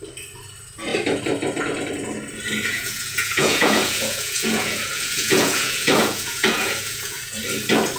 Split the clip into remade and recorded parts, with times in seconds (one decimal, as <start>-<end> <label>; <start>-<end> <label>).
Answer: 0.0-2.7 recorded; 2.7-7.4 remade; 7.4-8.0 recorded